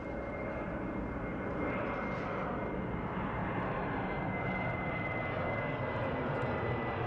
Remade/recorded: recorded